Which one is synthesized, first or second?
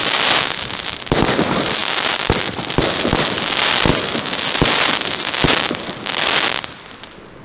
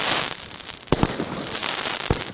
second